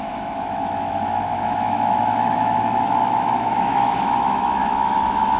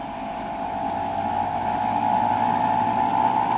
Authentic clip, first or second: second